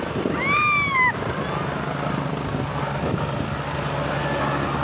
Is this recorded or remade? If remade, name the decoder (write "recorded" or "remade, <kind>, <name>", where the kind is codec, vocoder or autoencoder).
recorded